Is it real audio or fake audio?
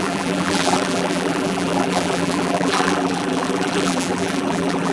fake